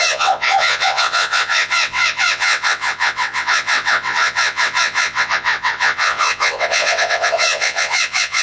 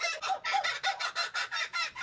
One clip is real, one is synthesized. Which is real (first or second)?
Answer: second